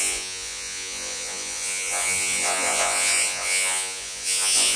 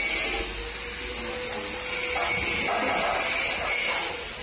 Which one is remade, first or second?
first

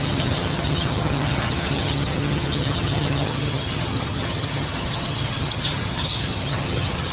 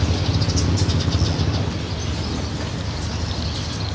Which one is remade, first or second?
first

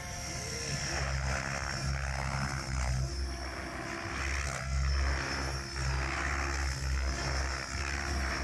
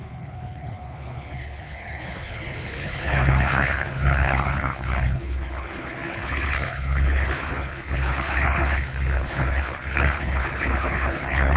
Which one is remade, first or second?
second